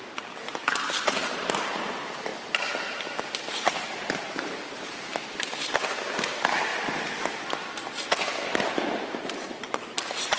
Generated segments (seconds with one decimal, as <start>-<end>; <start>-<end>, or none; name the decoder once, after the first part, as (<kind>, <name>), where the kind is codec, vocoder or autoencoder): 1.9-6.7 (vocoder, BigVGAN v2); 8.7-10.4